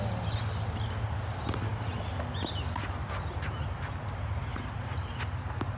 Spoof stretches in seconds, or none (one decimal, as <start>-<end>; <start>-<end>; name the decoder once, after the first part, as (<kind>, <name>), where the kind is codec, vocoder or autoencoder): none